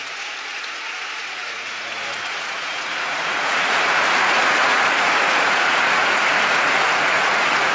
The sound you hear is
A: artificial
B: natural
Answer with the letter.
A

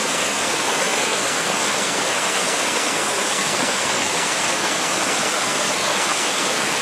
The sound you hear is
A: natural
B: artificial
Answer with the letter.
B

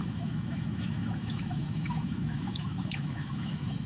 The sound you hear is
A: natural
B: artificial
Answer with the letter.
B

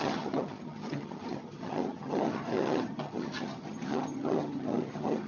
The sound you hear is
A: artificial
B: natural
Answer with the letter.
A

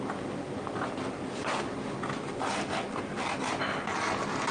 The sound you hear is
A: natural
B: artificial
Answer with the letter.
A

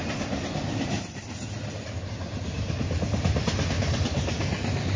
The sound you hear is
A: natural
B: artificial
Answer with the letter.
A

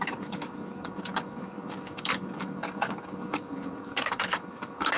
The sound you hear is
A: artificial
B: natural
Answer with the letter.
A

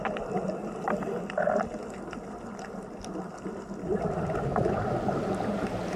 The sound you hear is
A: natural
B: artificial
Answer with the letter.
A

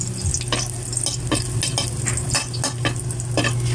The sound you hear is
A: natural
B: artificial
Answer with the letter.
A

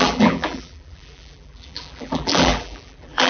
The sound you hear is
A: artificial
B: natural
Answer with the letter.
A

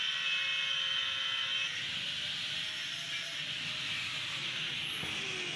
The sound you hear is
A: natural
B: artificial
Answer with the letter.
A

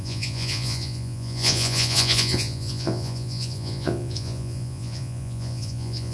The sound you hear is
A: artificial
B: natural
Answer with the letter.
A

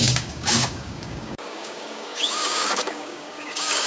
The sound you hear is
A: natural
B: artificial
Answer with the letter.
B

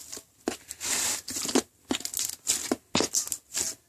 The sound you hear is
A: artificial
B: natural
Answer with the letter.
B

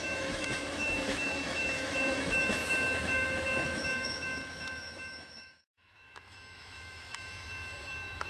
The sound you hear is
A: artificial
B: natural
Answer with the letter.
A